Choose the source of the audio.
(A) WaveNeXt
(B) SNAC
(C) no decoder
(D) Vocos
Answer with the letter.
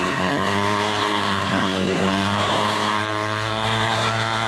B